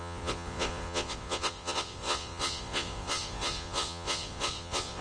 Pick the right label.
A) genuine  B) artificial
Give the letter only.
B